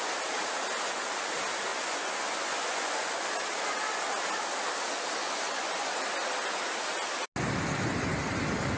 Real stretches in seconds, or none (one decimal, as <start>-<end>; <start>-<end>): 0.0-1.7; 3.2-5.2; 5.9-8.8